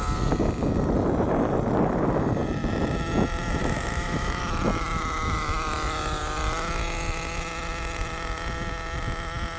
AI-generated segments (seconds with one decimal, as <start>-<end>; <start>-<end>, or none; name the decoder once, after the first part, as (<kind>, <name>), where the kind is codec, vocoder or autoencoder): 3.6-4.4 (autoencoder, DAC-VAE)